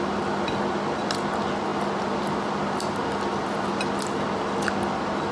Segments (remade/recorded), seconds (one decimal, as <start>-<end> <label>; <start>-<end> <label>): 0.0-5.3 recorded

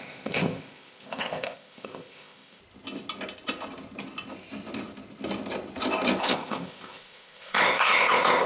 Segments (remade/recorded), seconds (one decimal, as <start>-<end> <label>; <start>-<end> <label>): 0.0-2.6 remade; 2.6-6.2 recorded; 6.2-8.5 remade